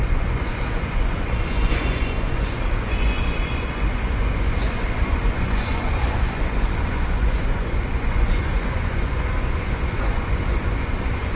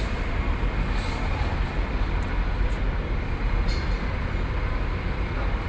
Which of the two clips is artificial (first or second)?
first